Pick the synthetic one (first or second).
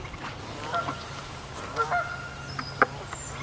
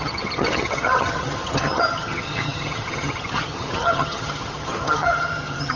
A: second